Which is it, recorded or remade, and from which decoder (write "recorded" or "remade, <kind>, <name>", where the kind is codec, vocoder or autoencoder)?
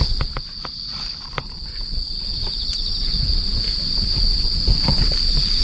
recorded